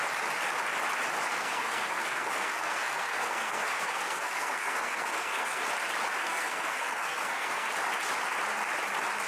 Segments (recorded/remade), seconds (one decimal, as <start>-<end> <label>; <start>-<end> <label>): 0.0-1.3 recorded; 1.3-5.6 remade; 5.6-6.2 recorded; 6.2-7.7 remade; 7.7-9.3 recorded

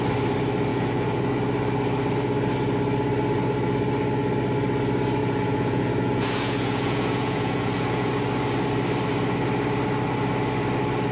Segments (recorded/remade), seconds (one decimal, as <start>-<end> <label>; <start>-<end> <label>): 0.0-0.7 recorded; 0.7-1.2 remade; 1.2-5.2 recorded; 5.2-8.1 remade; 8.1-11.1 recorded

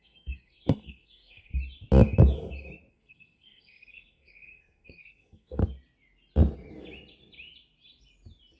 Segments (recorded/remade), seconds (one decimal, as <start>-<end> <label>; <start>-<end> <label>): 0.0-1.5 remade; 1.5-2.9 recorded; 2.9-5.6 remade; 5.6-8.6 recorded

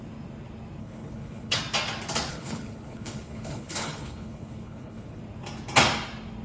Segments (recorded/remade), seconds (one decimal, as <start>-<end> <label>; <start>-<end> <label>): 0.0-0.8 recorded; 0.8-1.6 remade; 1.6-2.3 recorded; 2.3-5.2 remade; 5.2-6.4 recorded

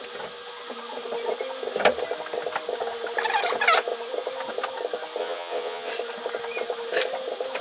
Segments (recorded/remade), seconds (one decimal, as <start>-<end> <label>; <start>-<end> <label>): 0.0-5.2 recorded; 5.2-5.9 remade; 5.9-7.6 recorded

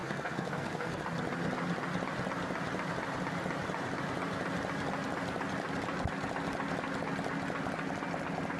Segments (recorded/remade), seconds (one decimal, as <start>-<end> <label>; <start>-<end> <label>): 0.0-1.0 remade; 1.0-8.6 recorded

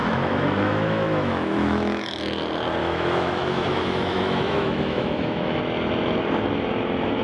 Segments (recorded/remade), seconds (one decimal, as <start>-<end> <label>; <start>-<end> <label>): 0.0-2.0 remade; 2.0-2.8 recorded; 2.8-5.6 remade; 5.6-7.2 recorded

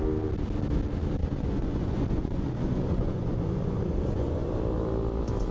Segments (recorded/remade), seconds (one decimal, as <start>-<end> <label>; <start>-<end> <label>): 0.0-1.2 recorded; 1.2-4.5 remade; 4.5-5.5 recorded